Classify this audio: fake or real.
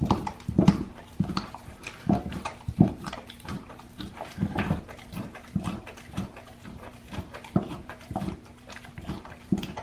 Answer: fake